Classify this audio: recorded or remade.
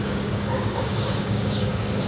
remade